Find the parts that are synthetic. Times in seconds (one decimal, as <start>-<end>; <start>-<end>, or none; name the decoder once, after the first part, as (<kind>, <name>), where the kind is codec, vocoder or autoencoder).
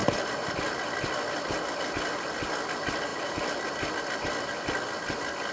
none